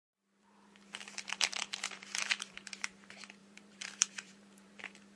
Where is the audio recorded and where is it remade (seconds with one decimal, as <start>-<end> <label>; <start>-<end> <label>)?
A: 0.0-5.2 remade